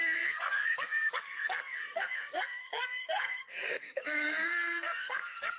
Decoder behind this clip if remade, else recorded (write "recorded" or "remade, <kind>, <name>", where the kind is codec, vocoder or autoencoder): remade, codec, SNAC